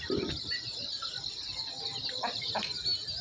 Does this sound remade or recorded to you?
recorded